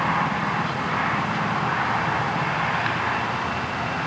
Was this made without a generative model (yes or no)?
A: yes